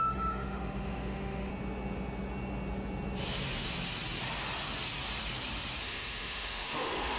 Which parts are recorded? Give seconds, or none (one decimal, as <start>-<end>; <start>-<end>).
1.5-5.8